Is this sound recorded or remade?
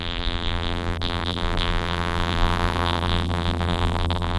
remade